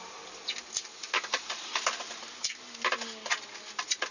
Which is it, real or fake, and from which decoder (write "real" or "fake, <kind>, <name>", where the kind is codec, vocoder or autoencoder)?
real